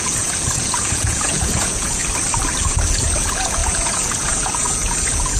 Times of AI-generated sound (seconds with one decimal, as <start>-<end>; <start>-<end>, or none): 0.0-2.0; 2.6-5.4